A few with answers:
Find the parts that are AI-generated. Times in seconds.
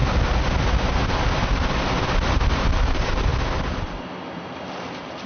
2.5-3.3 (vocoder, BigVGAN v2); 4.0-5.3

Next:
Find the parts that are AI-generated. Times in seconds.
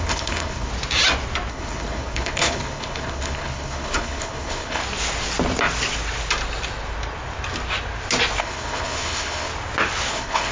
0.0-0.7 (codec, HILCodec); 1.5-4.8; 8.4-9.5; 10.1-10.5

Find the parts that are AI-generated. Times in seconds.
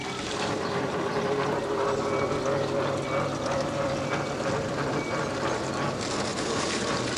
0.0-1.1 (vocoder, BigVGAN v2); 6.3-7.2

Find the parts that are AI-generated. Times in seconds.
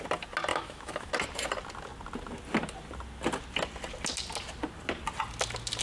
0.5-1.1 (autoencoder, DAC-VAE)